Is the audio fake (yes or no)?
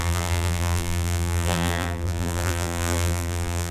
yes